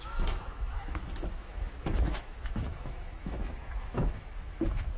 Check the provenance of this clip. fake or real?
fake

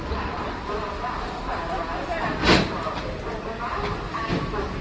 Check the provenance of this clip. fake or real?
real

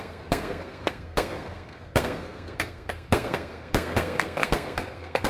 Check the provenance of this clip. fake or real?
fake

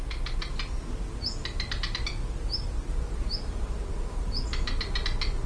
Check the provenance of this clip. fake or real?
real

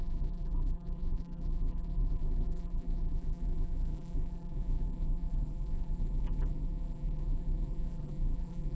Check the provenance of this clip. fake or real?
fake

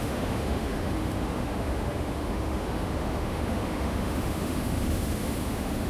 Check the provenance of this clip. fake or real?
fake